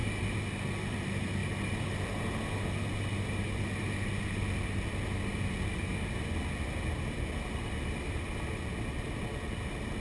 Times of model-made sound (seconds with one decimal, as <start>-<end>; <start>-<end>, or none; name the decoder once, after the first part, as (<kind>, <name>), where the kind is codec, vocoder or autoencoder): none